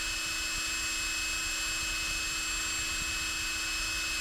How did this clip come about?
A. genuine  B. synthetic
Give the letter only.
A